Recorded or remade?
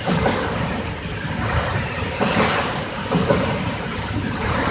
remade